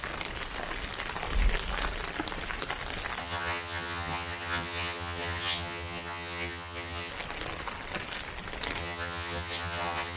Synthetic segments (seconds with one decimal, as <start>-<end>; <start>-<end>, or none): 3.2-7.1; 8.8-10.2